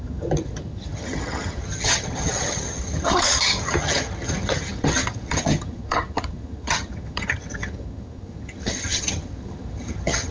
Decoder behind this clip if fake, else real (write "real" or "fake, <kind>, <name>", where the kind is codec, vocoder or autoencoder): fake, vocoder, HiFi-GAN